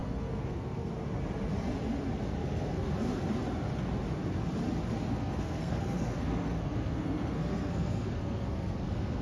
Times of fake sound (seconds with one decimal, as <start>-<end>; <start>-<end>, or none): 0.0-0.9; 2.4-2.9; 5.1-9.2